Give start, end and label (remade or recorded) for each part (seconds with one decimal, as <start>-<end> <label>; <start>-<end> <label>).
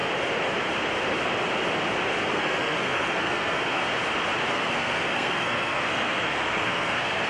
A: 0.0-2.3 recorded; 2.3-3.8 remade; 3.8-4.5 recorded; 4.5-7.3 remade